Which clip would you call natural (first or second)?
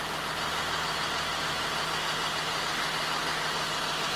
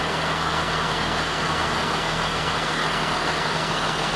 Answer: first